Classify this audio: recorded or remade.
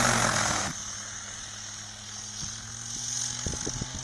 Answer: recorded